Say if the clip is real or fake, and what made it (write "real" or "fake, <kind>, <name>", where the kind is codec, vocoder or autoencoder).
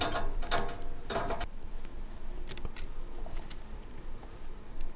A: real